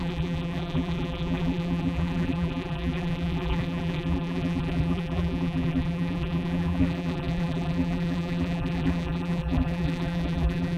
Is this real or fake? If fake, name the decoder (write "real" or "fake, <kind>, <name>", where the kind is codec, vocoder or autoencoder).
fake, vocoder, BigVGAN v2